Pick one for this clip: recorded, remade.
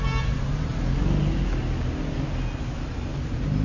recorded